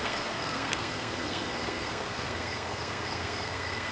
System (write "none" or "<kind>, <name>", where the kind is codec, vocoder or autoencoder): codec, SNAC